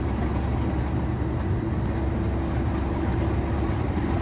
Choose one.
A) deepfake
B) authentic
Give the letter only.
B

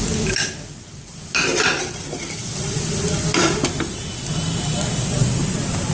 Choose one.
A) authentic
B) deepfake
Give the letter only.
A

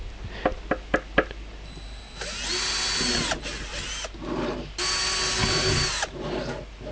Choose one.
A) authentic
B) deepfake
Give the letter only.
A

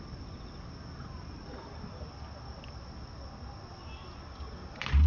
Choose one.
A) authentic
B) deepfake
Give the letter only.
A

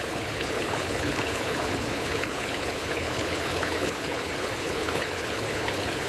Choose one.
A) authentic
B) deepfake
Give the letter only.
B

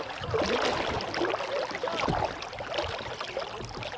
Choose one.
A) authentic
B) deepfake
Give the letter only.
A